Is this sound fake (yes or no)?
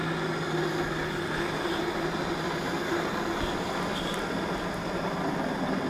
no